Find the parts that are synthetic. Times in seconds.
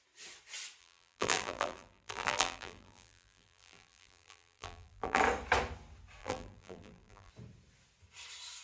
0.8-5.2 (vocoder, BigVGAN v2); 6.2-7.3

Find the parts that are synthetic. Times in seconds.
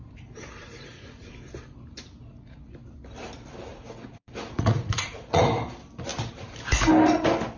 0.6-1.2 (vocoder, Vocos); 3.7-5.4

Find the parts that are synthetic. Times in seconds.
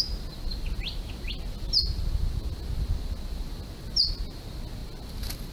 none